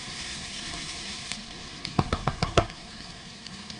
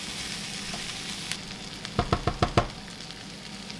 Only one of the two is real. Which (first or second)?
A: second